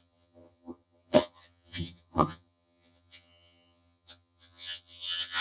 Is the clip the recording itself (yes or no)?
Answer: no